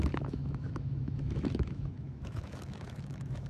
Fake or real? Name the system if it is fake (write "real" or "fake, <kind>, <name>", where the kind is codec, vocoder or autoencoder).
fake, autoencoder, DAC-VAE